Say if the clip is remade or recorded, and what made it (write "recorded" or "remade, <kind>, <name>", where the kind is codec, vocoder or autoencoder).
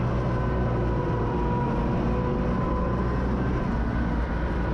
recorded